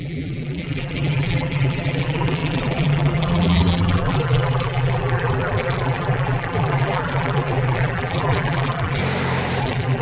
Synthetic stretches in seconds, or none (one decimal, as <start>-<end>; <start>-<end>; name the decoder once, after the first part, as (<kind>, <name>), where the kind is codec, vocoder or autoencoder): 0.0-9.0 (vocoder, BigVGAN v2); 9.6-10.0